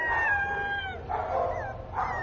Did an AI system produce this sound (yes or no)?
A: no